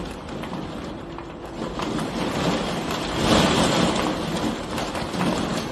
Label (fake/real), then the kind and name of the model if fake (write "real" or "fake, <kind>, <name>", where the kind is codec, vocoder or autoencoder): real